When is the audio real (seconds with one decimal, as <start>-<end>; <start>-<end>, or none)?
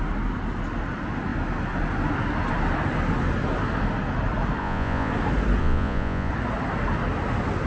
0.0-4.6; 5.1-5.6; 6.3-7.7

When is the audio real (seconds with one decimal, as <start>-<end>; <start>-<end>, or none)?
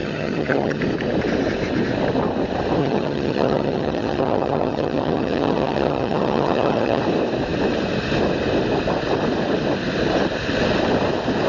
0.8-2.8; 7.0-11.5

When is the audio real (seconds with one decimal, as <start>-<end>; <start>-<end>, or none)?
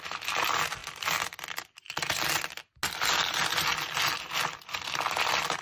0.0-5.6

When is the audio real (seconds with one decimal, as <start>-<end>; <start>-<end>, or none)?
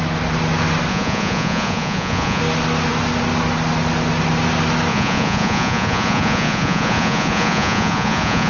0.0-0.9; 2.4-4.9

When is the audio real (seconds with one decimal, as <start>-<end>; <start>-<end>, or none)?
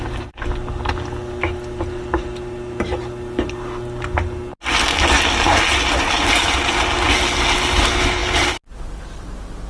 0.0-9.7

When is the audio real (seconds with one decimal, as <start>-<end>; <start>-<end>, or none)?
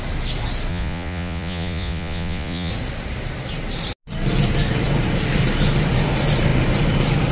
0.0-0.7; 2.7-7.3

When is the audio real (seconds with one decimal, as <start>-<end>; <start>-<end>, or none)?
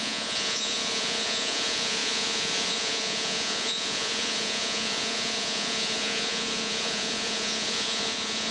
none